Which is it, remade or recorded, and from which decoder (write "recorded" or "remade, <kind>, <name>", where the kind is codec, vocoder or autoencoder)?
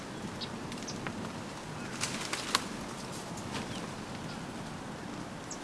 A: recorded